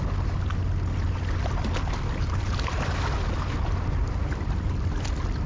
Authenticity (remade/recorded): recorded